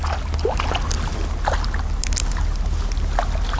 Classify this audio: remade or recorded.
recorded